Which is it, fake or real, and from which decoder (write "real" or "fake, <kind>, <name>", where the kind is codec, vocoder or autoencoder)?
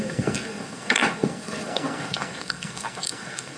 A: fake, codec, SNAC